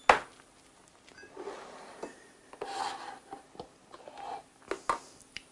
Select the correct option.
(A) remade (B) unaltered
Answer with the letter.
B